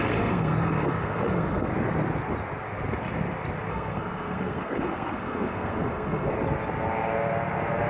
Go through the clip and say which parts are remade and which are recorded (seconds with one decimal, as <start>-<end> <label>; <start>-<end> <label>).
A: 0.0-1.7 remade; 1.7-3.7 recorded; 3.7-6.3 remade; 6.3-7.9 recorded